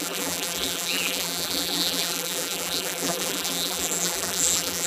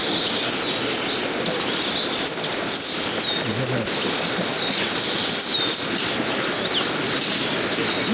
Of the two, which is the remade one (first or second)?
first